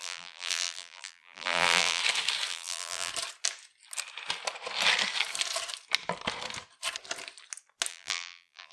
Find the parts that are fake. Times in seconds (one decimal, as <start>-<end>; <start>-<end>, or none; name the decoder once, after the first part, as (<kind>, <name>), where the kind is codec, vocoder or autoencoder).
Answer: 0.0-2.0 (vocoder, BigVGAN v2); 2.5-3.1; 7.9-8.7